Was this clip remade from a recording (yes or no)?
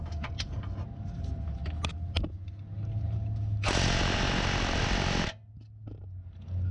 no